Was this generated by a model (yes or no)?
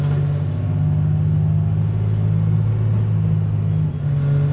no